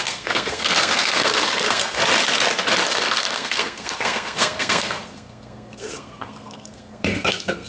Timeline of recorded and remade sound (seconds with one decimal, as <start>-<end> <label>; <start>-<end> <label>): 0.0-2.0 remade; 2.0-2.9 recorded; 2.9-7.7 remade